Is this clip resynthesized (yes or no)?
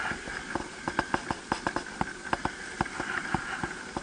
no